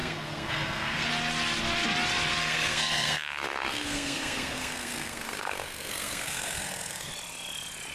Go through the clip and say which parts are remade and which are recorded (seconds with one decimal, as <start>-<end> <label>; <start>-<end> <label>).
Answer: 0.0-1.1 remade; 1.1-2.4 recorded; 2.4-7.1 remade; 7.1-7.9 recorded